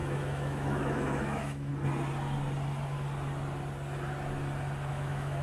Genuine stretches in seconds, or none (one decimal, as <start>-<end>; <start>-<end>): 1.7-4.9